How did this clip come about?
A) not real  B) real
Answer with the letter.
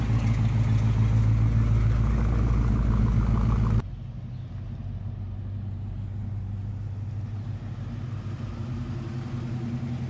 B